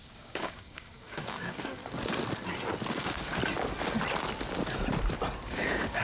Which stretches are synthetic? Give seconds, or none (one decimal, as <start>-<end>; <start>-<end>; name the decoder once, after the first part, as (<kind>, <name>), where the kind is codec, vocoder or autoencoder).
0.0-1.8 (codec, DAC); 2.9-3.4; 5.5-6.0